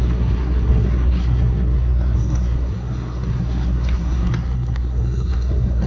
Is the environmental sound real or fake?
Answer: fake